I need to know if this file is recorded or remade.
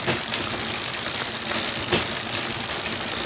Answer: recorded